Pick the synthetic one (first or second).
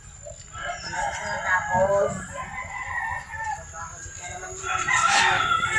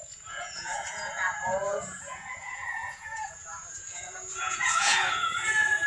second